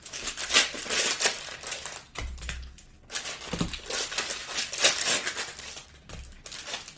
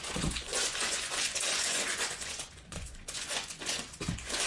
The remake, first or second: second